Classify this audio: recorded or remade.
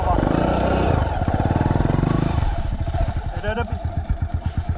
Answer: recorded